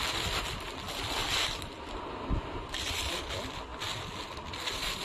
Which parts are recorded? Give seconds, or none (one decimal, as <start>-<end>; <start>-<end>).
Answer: 0.0-1.2; 2.0-2.4; 3.2-5.0